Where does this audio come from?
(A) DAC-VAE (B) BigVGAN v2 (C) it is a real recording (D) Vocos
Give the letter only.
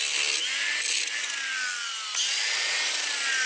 C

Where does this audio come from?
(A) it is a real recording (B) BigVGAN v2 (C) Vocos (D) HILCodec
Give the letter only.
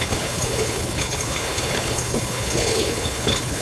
D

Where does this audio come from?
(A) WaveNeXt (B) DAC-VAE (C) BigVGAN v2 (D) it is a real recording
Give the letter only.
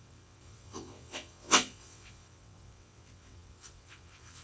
A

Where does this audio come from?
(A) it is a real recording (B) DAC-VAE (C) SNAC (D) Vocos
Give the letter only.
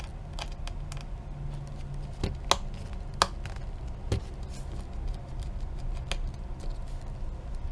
A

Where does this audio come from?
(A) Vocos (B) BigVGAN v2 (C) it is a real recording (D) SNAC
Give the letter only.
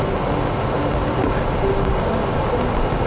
C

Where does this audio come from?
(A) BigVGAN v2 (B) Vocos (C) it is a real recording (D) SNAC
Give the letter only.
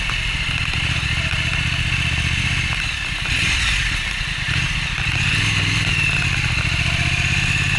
C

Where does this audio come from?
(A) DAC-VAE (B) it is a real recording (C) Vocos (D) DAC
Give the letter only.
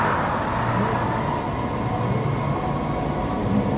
B